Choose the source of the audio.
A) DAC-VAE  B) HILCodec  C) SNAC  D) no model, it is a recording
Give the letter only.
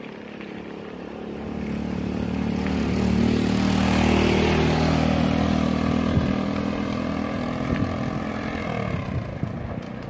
D